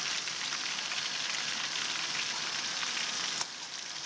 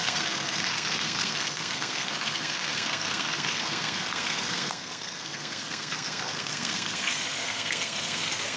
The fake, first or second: second